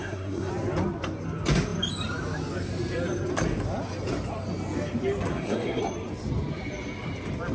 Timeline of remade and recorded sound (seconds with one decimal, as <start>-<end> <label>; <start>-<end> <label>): 0.0-0.5 remade; 0.5-5.3 recorded; 5.3-5.8 remade; 5.8-7.5 recorded